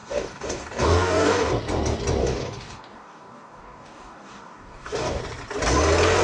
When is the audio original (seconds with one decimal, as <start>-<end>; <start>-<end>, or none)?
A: 1.5-2.2; 5.2-6.2